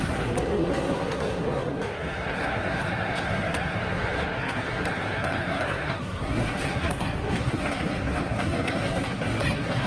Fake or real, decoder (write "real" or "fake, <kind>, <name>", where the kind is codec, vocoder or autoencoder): fake, codec, SNAC